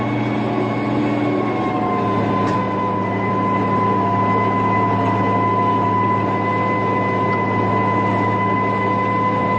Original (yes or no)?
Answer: yes